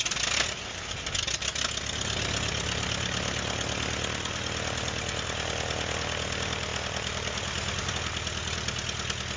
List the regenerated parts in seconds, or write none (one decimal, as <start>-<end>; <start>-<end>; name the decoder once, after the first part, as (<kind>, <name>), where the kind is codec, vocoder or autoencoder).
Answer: 6.7-7.9 (vocoder, BigVGAN v2)